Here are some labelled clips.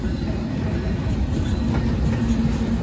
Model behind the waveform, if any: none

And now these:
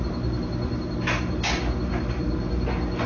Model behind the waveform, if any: none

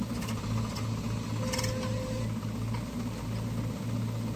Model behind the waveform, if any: none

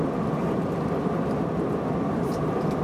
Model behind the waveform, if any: none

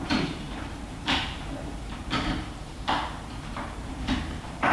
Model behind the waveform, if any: vocoder, BigVGAN v2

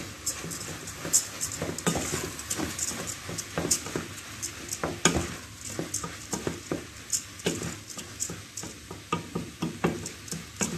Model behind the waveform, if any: none